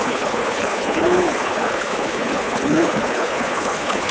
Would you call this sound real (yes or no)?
no